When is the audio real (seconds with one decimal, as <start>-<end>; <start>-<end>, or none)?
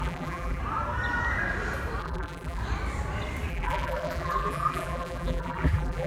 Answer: 0.6-2.0; 2.6-3.5